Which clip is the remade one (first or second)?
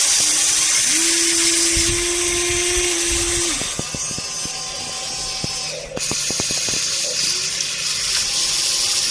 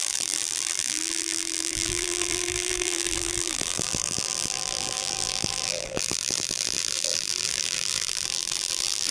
second